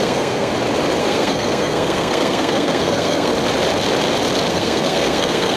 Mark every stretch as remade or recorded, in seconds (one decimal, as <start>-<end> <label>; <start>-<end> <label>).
0.0-0.5 remade; 0.5-1.0 recorded; 1.0-3.3 remade; 3.3-4.5 recorded; 4.5-5.6 remade